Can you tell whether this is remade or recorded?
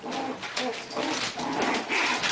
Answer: recorded